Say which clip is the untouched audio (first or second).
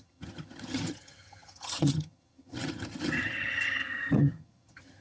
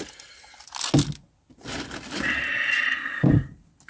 second